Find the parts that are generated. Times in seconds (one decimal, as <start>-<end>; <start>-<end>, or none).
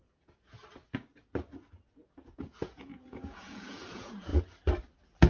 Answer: 0.0-0.6; 1.5-4.3